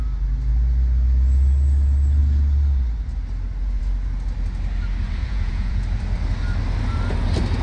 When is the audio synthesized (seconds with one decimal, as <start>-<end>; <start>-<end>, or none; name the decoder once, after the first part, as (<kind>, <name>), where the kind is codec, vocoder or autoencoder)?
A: 5.2-5.8 (vocoder, Vocos)